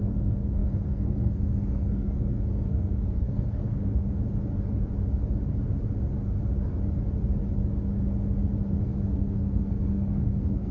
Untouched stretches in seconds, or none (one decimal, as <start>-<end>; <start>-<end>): 4.1-8.7